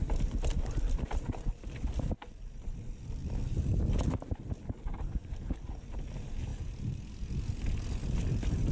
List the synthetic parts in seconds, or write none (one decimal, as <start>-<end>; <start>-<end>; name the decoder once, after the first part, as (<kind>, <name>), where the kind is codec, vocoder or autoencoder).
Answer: none